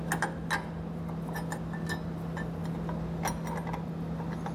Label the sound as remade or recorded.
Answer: recorded